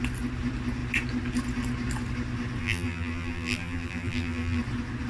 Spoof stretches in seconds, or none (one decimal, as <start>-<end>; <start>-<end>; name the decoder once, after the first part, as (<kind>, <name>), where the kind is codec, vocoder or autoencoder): 2.6-4.6 (vocoder, BigVGAN v2)